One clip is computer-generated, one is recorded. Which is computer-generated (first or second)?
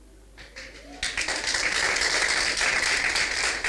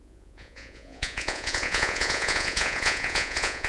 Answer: second